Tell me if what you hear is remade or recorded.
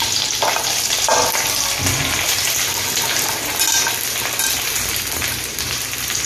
recorded